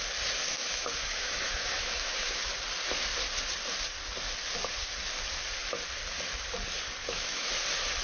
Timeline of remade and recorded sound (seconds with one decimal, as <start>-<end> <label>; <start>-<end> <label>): 0.0-0.5 recorded; 0.5-2.5 remade; 2.5-7.0 recorded; 7.0-7.5 remade; 7.5-8.0 recorded